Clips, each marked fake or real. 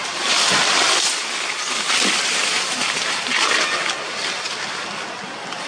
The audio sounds real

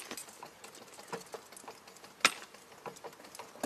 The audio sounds real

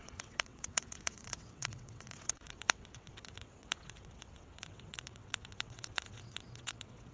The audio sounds fake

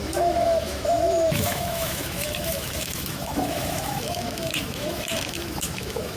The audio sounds fake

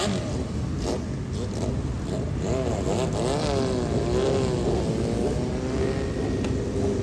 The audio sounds real